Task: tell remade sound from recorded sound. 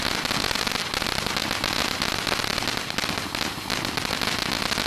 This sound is recorded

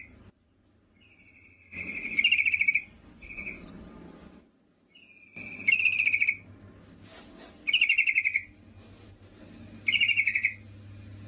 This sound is recorded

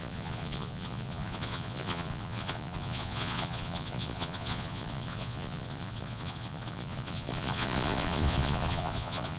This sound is remade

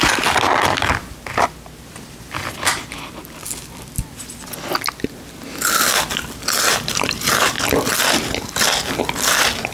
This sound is recorded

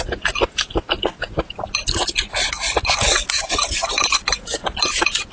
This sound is recorded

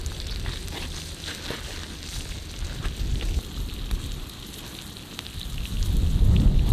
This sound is recorded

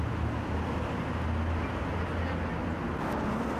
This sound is recorded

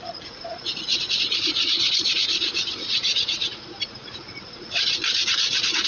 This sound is remade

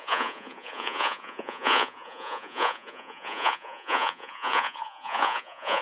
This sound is remade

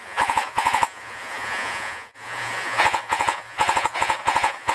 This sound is remade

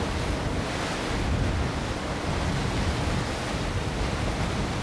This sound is recorded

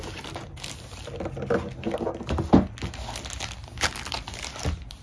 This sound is recorded